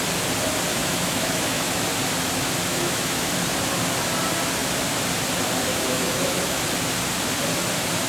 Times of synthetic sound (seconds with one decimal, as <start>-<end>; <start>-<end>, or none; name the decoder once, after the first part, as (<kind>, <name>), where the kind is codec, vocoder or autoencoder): 0.7-1.8 (autoencoder, DAC-VAE); 2.7-3.3; 5.7-6.6